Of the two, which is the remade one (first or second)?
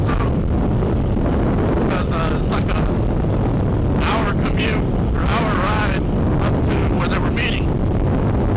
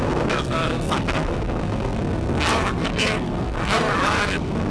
second